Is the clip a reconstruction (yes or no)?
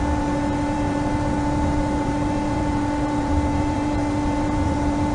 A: yes